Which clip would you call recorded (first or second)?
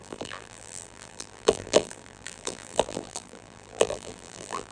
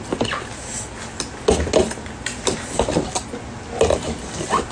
second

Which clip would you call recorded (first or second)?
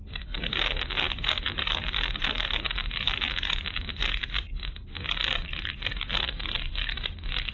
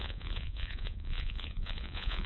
first